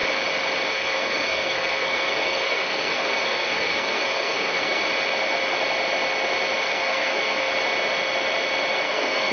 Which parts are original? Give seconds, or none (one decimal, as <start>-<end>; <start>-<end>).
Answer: 0.0-0.7; 4.8-6.6; 7.5-8.7